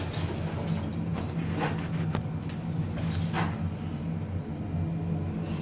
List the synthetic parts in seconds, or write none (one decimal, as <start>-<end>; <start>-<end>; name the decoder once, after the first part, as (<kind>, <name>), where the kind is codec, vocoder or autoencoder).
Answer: none